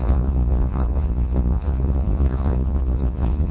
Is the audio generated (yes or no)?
yes